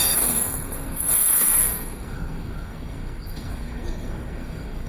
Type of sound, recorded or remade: remade